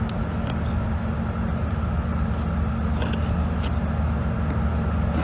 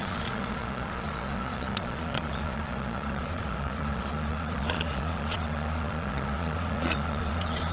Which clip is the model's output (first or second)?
second